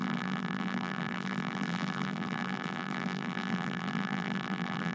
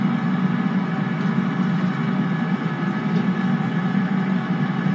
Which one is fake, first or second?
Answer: first